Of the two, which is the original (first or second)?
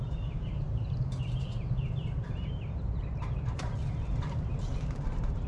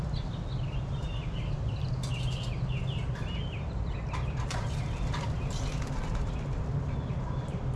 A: second